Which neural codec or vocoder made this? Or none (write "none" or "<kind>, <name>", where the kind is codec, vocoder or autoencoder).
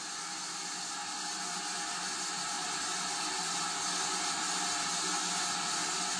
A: none